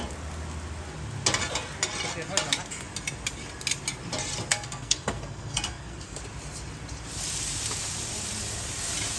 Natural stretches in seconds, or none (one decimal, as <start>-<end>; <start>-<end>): 0.0-4.5; 6.2-9.2